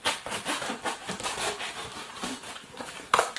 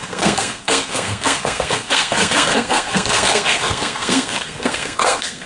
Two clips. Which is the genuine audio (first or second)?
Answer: first